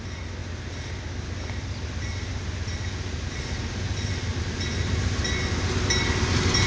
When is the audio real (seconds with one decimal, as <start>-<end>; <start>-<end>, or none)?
0.0-6.7